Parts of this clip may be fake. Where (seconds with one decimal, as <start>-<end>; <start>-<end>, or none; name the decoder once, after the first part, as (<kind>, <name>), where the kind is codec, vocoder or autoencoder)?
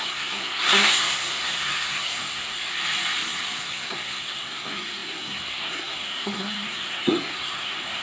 0.0-2.7 (codec, SNAC); 3.7-8.0